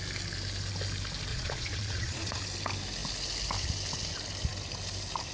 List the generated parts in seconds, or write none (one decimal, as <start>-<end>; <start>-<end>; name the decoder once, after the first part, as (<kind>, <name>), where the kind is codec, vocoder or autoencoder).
1.3-2.4 (vocoder, Vocos)